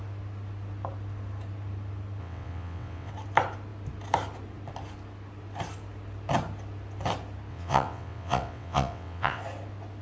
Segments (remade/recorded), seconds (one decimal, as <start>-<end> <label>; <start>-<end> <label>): 0.0-2.2 recorded; 2.2-3.1 remade; 3.1-7.5 recorded; 7.5-9.4 remade; 9.4-10.0 recorded